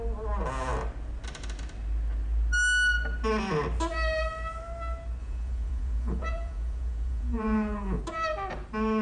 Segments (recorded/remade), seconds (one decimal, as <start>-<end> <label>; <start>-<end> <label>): 0.0-5.2 recorded; 5.2-8.0 remade; 8.0-9.0 recorded

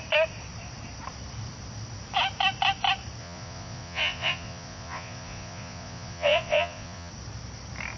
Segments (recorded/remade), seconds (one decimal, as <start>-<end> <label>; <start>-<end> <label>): 0.0-3.2 recorded; 3.2-7.1 remade; 7.1-8.0 recorded

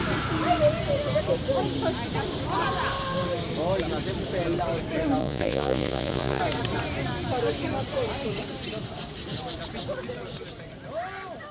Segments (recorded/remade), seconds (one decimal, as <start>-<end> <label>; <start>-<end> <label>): 0.0-5.2 recorded; 5.2-6.4 remade; 6.4-11.5 recorded

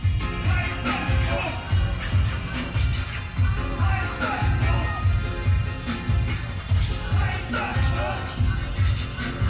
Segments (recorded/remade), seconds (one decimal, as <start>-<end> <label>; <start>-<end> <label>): 0.0-9.5 recorded

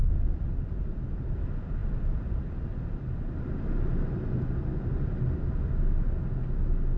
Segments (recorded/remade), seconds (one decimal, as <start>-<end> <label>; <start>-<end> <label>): 0.0-1.4 remade; 1.4-1.8 recorded; 1.8-3.5 remade; 3.5-7.0 recorded

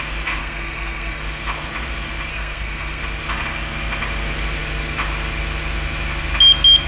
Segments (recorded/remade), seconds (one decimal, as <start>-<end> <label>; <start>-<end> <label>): 0.0-0.4 recorded; 0.4-1.2 remade; 1.2-2.3 recorded; 2.3-3.0 remade; 3.0-6.9 recorded

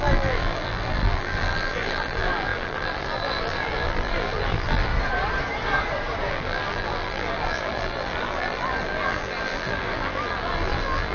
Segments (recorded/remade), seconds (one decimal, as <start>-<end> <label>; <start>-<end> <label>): 0.0-4.9 remade; 4.9-6.3 recorded; 6.3-11.1 remade